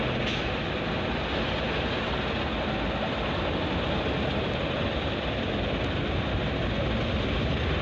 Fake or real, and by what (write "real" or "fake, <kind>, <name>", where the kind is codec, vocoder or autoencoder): real